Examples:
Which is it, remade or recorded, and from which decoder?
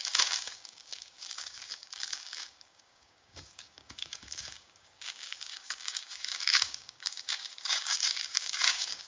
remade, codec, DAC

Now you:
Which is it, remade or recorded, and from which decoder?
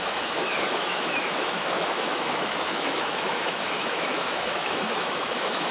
remade, autoencoder, DAC-VAE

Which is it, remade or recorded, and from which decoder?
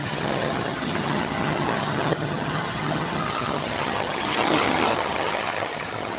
remade, vocoder, HiFi-GAN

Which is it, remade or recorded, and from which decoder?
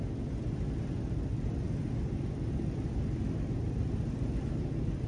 recorded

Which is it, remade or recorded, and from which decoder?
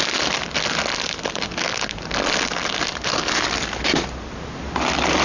recorded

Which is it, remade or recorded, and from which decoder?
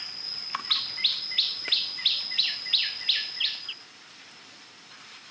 recorded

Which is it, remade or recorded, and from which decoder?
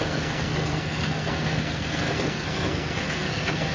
remade, codec, SNAC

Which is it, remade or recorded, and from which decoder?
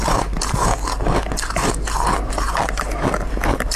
recorded